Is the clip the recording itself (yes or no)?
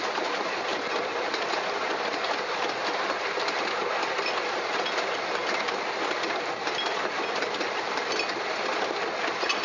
yes